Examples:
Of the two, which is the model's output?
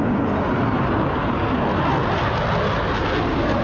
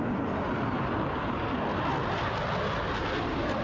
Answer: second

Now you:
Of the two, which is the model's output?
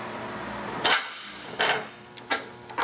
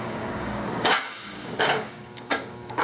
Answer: second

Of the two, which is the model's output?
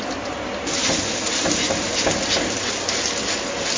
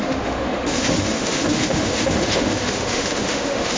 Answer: second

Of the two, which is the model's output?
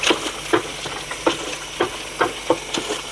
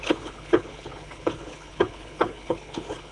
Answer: second